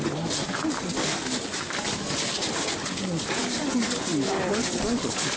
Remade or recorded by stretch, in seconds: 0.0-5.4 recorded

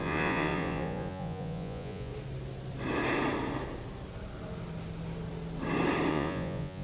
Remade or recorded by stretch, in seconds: 0.0-2.1 remade; 2.1-6.1 recorded; 6.1-6.8 remade

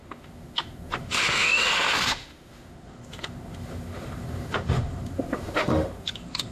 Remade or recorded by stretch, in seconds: 0.0-6.5 remade